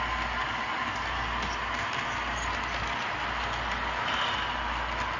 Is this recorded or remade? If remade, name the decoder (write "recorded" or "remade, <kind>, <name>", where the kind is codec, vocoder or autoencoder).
recorded